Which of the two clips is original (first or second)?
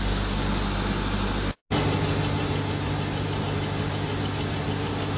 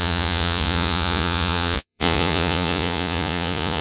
first